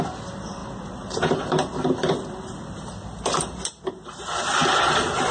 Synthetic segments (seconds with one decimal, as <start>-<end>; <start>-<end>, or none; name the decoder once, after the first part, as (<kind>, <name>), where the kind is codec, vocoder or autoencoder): 0.0-0.6 (vocoder, BigVGAN v2); 3.8-4.6